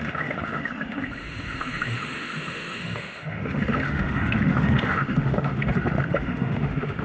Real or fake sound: fake